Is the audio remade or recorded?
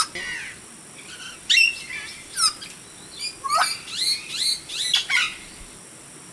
recorded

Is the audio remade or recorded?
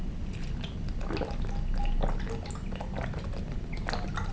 recorded